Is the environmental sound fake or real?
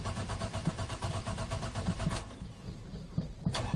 real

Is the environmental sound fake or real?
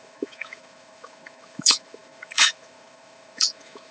fake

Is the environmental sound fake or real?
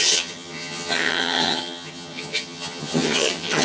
fake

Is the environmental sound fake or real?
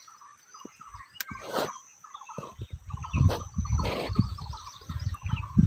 real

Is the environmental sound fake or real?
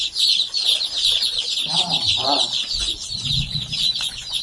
fake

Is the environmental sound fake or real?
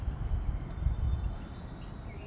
real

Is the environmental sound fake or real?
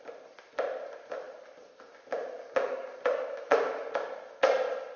real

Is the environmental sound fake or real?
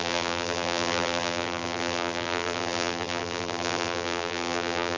fake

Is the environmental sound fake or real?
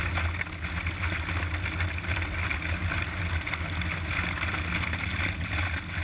real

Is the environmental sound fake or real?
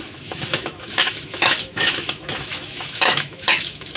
fake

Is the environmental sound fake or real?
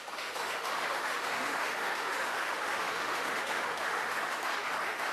fake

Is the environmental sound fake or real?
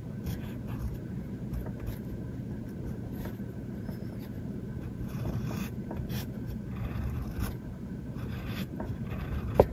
fake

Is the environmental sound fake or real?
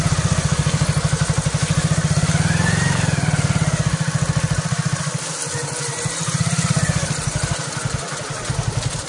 real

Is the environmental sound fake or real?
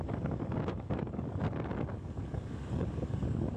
fake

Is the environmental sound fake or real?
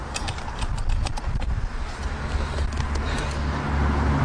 real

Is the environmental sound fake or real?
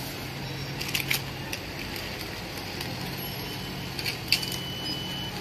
real